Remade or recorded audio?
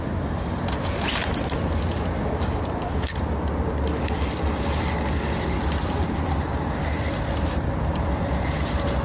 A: recorded